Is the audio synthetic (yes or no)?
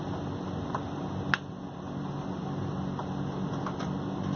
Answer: no